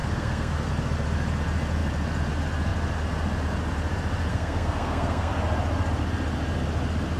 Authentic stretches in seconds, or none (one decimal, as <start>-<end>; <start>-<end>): 0.7-4.3; 5.3-7.2